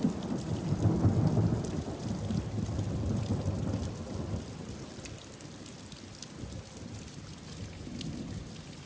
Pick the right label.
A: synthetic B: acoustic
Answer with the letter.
B